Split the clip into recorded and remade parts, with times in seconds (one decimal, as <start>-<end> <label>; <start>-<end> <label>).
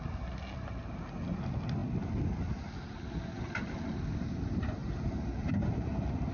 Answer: 0.0-6.3 recorded